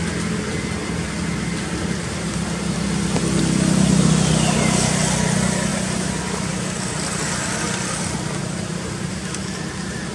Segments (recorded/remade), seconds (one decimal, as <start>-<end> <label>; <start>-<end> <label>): 0.0-5.7 recorded; 5.7-6.2 remade; 6.2-8.4 recorded; 8.4-9.1 remade; 9.1-10.1 recorded